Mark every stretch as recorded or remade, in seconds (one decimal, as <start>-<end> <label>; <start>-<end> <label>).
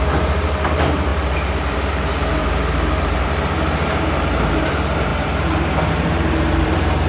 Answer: 0.0-7.1 remade